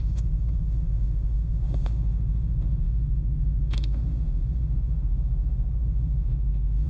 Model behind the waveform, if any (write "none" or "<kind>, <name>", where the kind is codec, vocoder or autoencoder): autoencoder, DAC-VAE